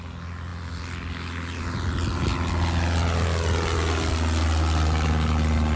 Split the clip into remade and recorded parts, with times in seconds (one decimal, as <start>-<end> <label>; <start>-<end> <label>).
0.0-5.8 recorded